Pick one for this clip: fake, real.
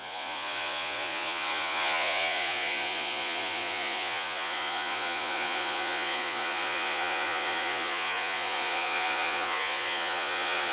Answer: fake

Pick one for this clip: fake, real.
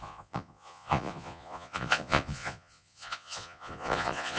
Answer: fake